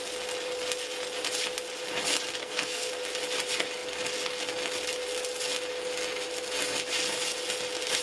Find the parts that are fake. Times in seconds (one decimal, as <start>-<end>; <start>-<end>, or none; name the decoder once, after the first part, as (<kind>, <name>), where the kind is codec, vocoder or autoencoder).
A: 2.4-2.9 (codec, SNAC)